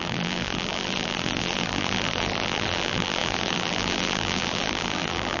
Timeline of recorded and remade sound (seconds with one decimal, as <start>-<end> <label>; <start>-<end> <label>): 0.0-5.4 remade